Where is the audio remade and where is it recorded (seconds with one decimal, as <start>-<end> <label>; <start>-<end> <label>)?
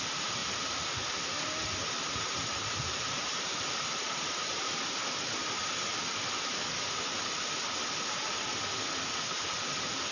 0.0-0.4 remade; 0.4-2.2 recorded; 2.2-5.4 remade; 5.4-9.7 recorded; 9.7-10.1 remade